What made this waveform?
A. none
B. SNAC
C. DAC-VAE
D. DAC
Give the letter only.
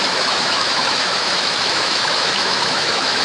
C